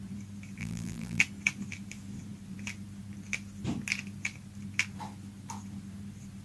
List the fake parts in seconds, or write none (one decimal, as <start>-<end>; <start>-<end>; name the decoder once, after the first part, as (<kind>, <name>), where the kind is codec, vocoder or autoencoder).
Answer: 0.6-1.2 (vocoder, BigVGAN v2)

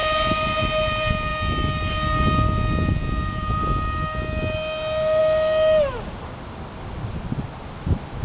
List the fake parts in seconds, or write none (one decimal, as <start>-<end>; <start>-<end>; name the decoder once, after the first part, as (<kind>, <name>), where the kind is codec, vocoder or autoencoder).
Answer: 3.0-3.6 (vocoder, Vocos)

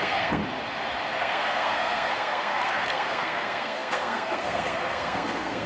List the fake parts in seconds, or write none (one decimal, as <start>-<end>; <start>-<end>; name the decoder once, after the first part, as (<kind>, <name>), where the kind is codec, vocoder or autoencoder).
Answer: 0.0-0.4 (codec, SNAC); 1.2-5.7